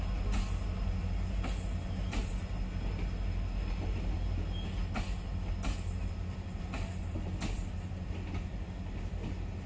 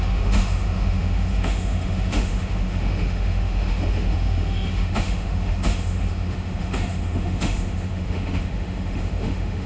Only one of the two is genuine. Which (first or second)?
first